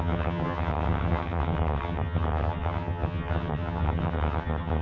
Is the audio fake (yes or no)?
yes